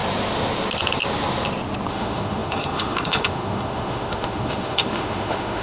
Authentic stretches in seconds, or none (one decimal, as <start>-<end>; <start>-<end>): 0.0-1.9